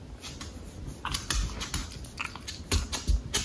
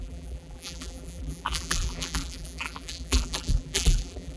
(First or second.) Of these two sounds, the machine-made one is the second